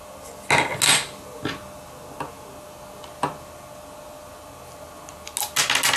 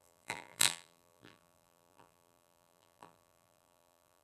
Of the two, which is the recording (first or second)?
first